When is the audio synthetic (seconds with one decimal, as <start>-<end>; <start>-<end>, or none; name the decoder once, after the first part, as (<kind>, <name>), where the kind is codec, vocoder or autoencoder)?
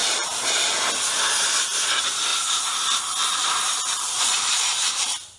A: 0.0-0.8 (vocoder, BigVGAN v2); 2.3-5.4